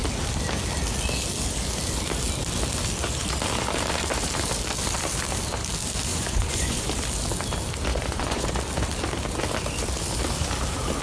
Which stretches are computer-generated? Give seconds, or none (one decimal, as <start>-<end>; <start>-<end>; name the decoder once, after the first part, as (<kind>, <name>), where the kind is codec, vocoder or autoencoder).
6.1-6.9 (vocoder, Vocos); 7.9-8.6